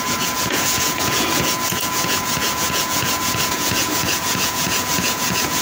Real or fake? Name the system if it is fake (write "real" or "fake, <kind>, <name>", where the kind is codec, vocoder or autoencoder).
fake, vocoder, Vocos